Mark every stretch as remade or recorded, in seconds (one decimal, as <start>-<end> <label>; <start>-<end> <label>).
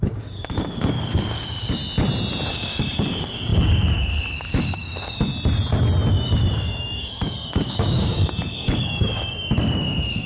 0.0-1.8 remade; 1.8-2.5 recorded; 2.5-5.3 remade; 5.3-6.1 recorded; 6.1-10.3 remade